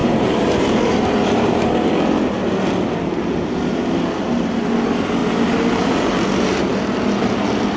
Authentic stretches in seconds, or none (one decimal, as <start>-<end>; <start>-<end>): 1.9-7.8